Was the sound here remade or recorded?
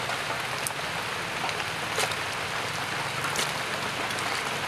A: recorded